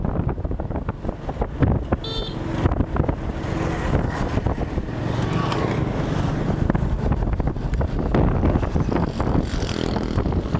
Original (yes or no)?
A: yes